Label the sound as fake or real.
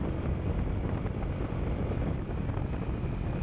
real